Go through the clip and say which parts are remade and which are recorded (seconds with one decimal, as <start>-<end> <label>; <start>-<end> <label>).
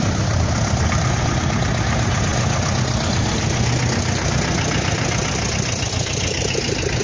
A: 0.0-7.0 recorded